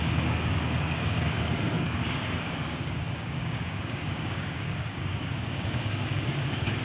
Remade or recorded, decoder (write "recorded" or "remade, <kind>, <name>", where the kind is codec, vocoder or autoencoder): remade, codec, DAC